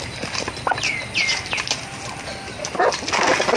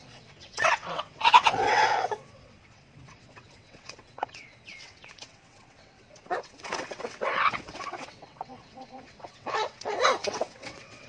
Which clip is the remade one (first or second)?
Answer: second